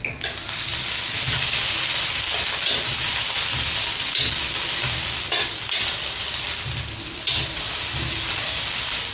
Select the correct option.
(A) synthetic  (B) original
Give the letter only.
B